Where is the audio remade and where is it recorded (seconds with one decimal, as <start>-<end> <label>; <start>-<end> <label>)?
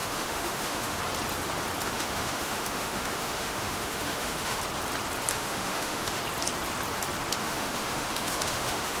0.0-1.0 remade; 1.0-1.8 recorded; 1.8-4.6 remade; 4.6-5.3 recorded; 5.3-6.2 remade; 6.2-7.4 recorded; 7.4-9.0 remade